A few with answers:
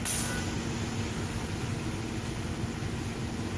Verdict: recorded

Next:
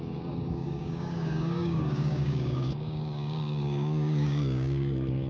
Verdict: remade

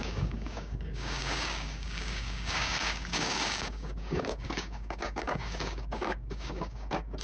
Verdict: remade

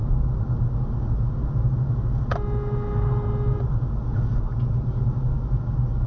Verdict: recorded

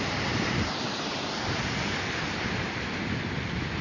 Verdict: recorded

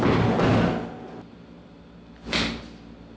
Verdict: recorded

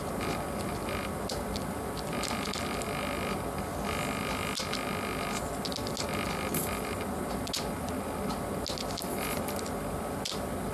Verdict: recorded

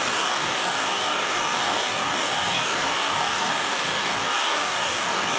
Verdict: remade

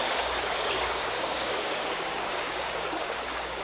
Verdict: remade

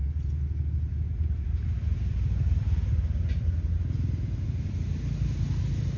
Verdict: recorded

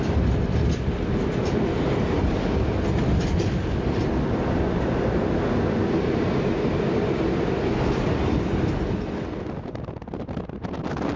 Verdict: recorded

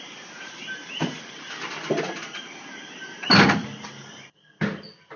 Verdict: recorded